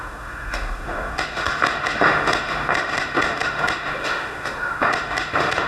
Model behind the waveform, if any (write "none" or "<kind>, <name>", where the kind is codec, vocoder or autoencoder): autoencoder, DAC-VAE